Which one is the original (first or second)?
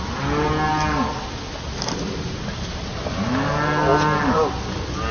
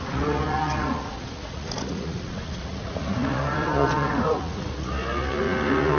first